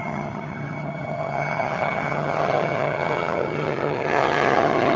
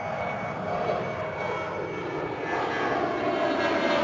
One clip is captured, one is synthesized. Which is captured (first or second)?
second